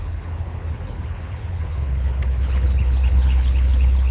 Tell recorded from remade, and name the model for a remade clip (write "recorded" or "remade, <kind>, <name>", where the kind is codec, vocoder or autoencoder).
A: remade, codec, HILCodec